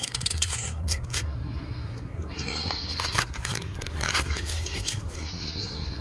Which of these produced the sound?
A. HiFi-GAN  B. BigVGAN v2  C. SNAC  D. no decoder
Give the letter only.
C